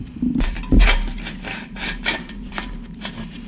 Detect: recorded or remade remade